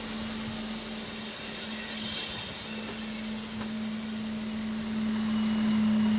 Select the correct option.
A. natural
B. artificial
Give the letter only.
A